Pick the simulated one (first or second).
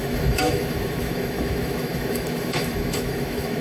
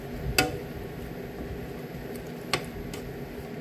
first